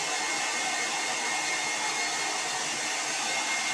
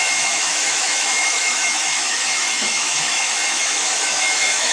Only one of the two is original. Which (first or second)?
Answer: first